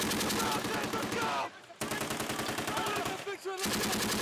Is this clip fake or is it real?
real